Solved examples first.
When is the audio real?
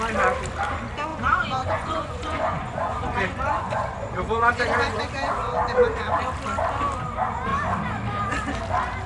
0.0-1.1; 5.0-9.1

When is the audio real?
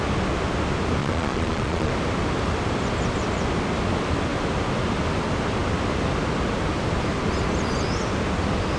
0.0-1.0; 1.9-8.8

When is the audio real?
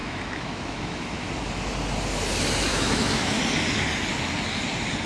1.3-2.7; 3.4-5.1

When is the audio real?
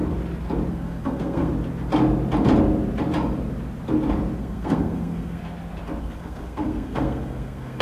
0.0-0.7; 1.5-4.4; 5.4-6.0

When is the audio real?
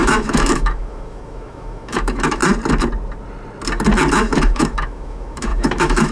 2.4-4.1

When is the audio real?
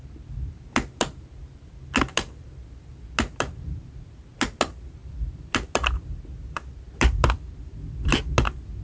0.0-8.8